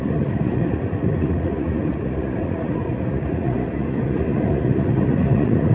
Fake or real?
fake